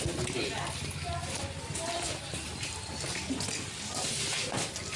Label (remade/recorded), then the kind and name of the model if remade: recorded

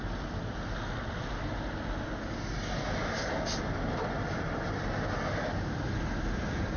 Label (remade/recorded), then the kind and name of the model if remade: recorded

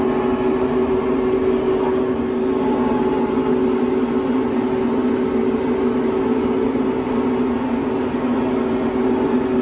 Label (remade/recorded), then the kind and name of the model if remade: recorded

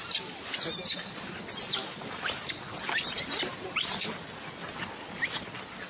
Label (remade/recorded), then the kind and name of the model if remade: recorded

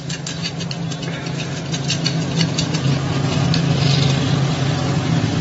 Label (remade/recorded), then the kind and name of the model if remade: recorded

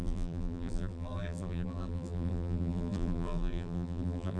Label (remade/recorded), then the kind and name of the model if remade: remade, vocoder, BigVGAN v2